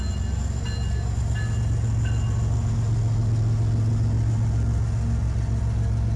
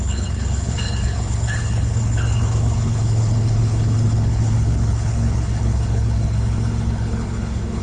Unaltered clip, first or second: first